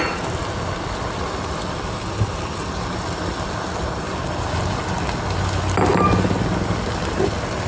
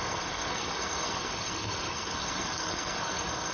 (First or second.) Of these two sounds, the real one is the first